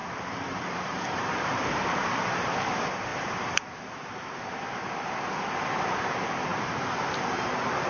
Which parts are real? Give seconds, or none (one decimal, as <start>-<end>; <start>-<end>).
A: 2.5-3.1; 4.4-7.9